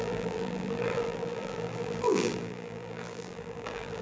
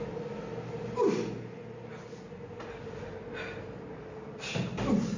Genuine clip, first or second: second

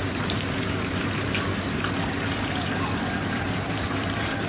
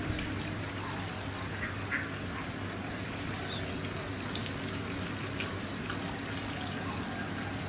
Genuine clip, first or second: second